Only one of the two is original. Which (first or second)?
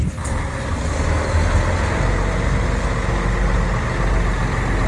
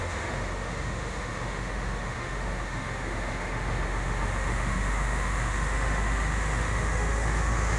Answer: first